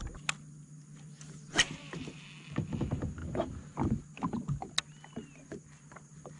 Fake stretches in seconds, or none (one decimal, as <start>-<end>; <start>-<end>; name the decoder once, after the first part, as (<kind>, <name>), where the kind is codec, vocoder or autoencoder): none